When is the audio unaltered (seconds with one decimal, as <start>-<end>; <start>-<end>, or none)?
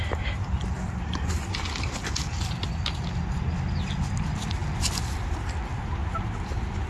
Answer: 0.0-6.9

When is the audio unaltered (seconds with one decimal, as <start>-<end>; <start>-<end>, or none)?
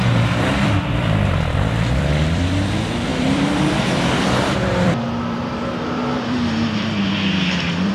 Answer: none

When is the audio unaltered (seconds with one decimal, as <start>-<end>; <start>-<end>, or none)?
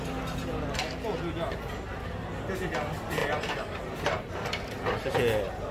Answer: 0.0-3.2; 4.3-5.7